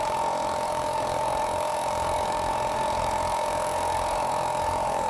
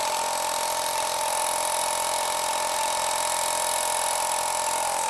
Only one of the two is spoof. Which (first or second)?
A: first